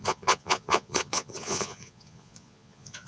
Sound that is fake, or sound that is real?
fake